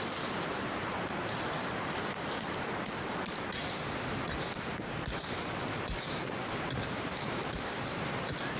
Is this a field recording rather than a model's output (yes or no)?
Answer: no